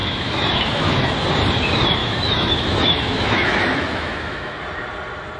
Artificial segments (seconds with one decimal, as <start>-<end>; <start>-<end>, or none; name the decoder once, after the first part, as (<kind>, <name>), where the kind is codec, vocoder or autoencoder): 0.0-1.1 (autoencoder, DAC-VAE); 2.0-4.6